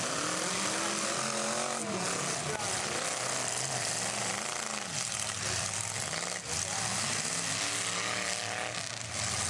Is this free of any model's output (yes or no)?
yes